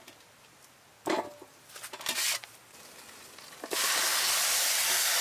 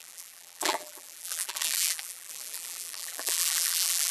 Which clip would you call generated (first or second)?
second